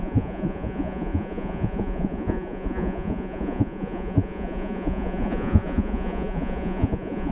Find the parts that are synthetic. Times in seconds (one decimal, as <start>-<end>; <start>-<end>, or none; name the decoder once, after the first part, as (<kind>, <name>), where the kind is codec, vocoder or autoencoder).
0.0-7.3 (vocoder, Vocos)